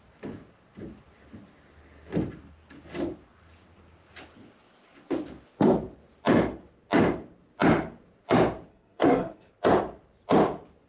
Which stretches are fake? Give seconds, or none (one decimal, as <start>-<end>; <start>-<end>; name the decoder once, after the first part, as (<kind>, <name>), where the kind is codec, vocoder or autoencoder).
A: 8.7-9.5 (codec, SNAC)